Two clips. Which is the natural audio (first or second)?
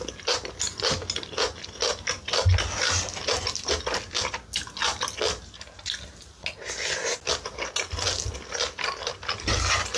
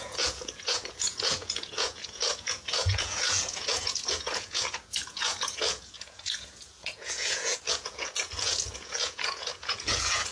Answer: first